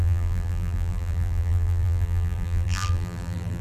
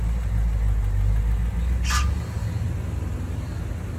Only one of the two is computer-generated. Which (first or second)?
first